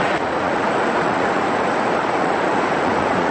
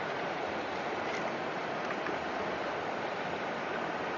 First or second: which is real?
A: second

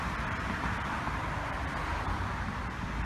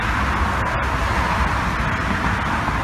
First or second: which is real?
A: second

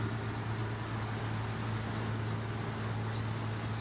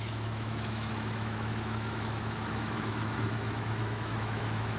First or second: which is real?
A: first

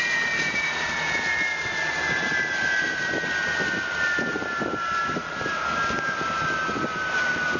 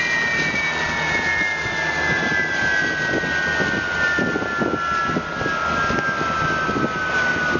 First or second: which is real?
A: second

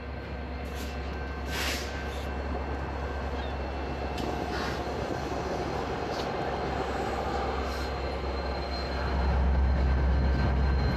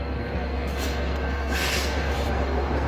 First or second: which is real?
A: first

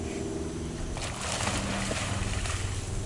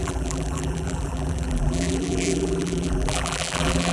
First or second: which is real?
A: first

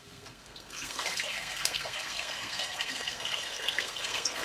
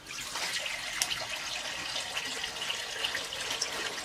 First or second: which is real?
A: second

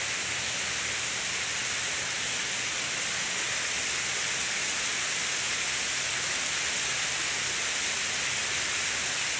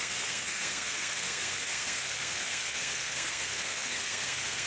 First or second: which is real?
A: first